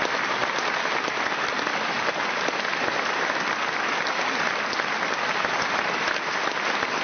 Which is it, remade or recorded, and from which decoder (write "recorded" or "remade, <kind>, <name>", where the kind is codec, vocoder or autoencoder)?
recorded